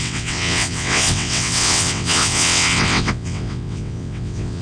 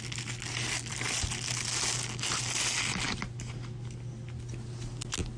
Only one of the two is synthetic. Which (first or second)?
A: first